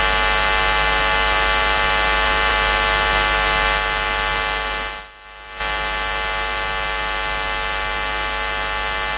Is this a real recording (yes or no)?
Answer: yes